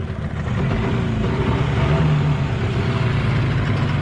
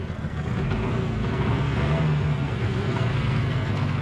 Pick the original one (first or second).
first